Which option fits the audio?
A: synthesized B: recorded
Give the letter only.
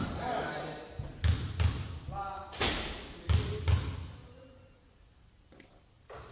B